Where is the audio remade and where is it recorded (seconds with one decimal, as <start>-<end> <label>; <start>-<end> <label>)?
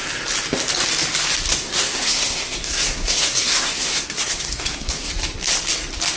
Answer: 0.0-1.5 recorded; 1.5-5.1 remade; 5.1-6.2 recorded